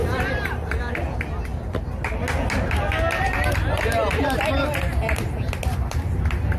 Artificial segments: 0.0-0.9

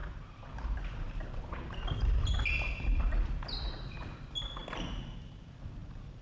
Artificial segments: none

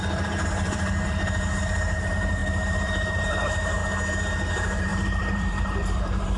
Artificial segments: 0.0-3.8; 4.5-6.4

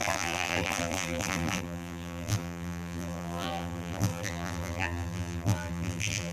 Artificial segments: 0.0-6.3